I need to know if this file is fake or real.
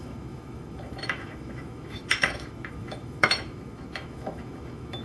fake